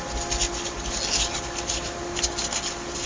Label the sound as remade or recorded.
recorded